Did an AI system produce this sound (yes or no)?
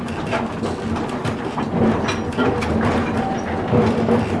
no